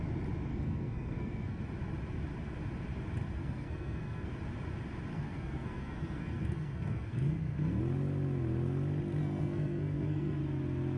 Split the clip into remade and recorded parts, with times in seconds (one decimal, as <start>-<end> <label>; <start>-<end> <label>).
0.0-0.5 recorded; 0.5-1.6 remade; 1.6-3.4 recorded; 3.4-4.3 remade; 4.3-5.1 recorded; 5.1-7.8 remade; 7.8-9.2 recorded; 9.2-10.4 remade; 10.4-11.0 recorded